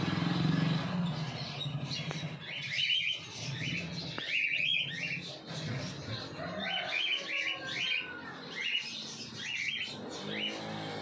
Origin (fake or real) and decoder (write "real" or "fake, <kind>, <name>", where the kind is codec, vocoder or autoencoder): real